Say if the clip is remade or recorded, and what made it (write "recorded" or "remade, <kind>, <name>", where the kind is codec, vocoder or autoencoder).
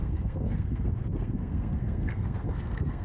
remade, codec, SNAC